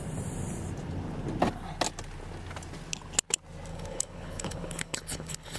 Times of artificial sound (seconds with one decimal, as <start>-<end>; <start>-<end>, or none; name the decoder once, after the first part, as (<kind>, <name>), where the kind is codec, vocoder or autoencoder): 3.7-5.6 (codec, HILCodec)

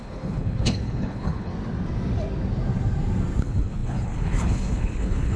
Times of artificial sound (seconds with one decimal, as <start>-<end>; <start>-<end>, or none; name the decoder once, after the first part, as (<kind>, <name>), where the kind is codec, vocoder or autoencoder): 0.0-1.5 (codec, HILCodec); 3.4-5.4

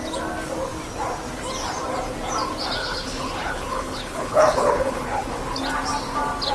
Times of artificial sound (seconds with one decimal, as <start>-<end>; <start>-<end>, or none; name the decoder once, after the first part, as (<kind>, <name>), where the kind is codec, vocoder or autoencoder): 2.8-5.4 (codec, HILCodec)

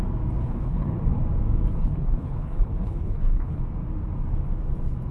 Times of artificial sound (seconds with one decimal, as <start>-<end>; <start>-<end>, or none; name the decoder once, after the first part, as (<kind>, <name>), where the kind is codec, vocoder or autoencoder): 0.4-1.0 (codec, HILCodec); 1.8-3.6

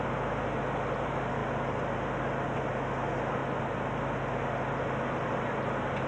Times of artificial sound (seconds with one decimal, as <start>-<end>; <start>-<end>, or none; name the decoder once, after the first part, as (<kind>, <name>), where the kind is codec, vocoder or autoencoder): none